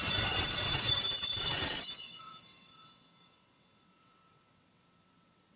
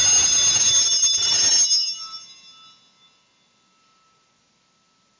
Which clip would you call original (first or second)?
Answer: second